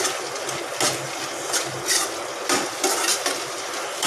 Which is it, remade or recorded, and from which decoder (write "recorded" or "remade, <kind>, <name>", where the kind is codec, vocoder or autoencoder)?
recorded